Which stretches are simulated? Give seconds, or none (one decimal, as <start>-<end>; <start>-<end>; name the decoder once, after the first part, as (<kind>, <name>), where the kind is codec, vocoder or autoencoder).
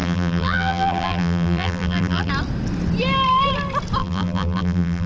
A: 0.0-2.3 (vocoder, BigVGAN v2); 4.0-5.1